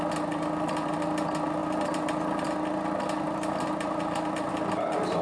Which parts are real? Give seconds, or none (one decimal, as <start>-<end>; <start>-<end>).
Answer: 0.0-5.2